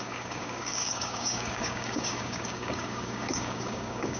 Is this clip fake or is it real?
fake